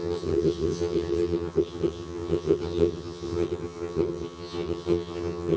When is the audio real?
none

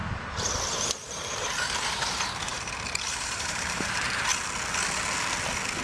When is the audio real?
4.3-5.8

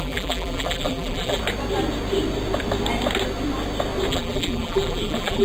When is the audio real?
1.4-4.1

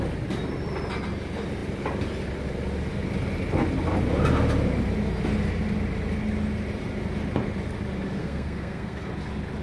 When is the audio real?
0.0-8.2; 9.1-9.6

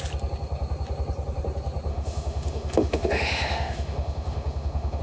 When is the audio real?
0.0-1.9

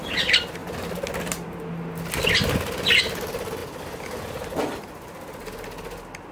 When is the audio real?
0.0-6.3

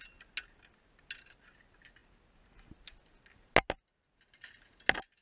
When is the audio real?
0.0-5.2

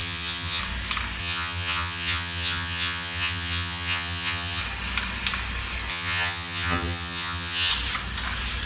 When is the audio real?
0.6-1.2; 4.6-5.9; 7.7-8.7